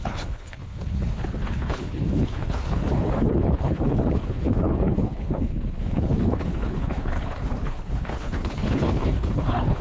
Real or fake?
fake